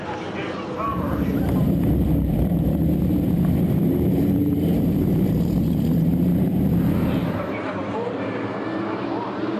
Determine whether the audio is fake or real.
fake